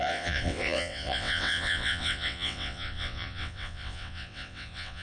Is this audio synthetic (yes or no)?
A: yes